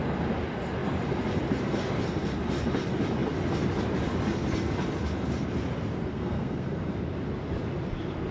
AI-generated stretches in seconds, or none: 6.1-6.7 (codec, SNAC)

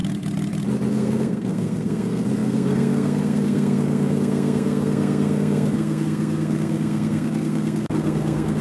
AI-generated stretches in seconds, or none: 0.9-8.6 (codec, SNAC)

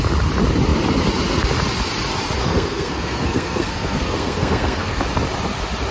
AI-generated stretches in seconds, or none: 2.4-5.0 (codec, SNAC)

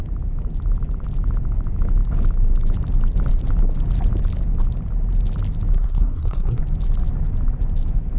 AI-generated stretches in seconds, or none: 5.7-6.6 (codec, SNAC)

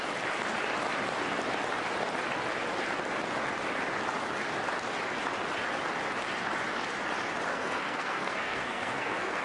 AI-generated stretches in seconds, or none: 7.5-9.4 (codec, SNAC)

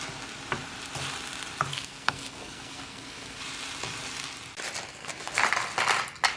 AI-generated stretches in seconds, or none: 1.7-3.4 (codec, SNAC); 4.9-5.4

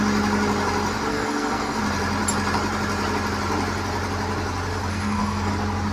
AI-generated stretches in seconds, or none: 1.1-1.8 (codec, SNAC); 4.9-5.5